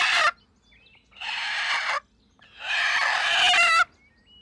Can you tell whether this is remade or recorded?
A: recorded